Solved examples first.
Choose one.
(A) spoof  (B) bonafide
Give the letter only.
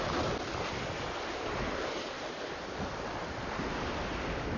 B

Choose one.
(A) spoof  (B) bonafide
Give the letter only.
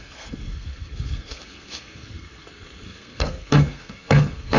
A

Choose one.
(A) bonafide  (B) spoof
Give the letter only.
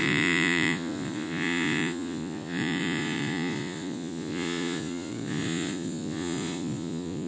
B